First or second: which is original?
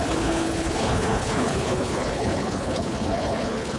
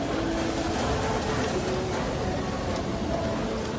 second